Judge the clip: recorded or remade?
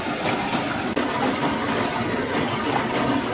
recorded